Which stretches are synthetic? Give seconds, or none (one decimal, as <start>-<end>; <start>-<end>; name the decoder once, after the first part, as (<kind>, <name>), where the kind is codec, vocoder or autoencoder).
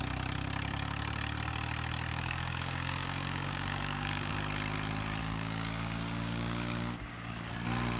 2.1-4.3 (codec, DAC); 5.2-7.5